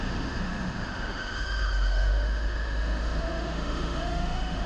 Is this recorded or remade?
remade